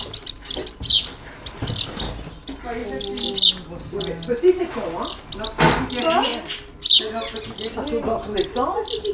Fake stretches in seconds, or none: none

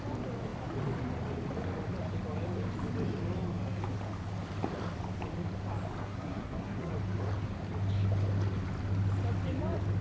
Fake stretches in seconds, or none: 6.0-6.9 (codec, SNAC)